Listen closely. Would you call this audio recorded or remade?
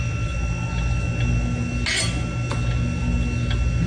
recorded